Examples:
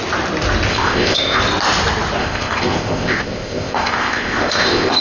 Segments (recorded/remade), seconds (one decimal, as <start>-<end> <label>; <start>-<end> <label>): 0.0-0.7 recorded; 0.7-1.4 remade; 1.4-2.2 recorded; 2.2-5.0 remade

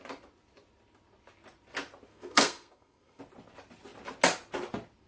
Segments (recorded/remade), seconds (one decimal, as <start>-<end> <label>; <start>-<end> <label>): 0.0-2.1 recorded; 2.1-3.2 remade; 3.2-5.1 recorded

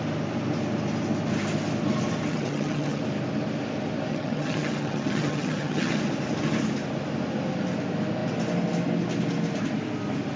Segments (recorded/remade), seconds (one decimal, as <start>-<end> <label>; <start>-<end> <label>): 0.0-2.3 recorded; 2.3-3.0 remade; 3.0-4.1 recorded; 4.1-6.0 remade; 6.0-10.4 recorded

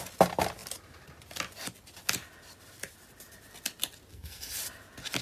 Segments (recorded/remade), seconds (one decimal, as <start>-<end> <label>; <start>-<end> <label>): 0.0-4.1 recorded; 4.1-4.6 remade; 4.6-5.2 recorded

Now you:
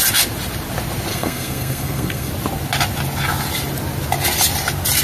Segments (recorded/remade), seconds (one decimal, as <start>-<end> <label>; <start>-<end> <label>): 0.0-1.1 recorded; 1.1-2.3 remade; 2.3-5.0 recorded

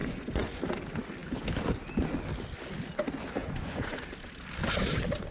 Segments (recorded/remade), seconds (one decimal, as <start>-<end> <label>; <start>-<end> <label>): 0.0-0.6 remade; 0.6-3.4 recorded; 3.4-4.0 remade; 4.0-5.3 recorded